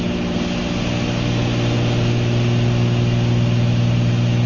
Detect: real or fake real